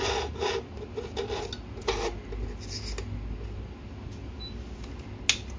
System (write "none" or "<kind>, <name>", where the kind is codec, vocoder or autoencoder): none